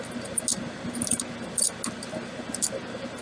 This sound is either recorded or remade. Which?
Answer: recorded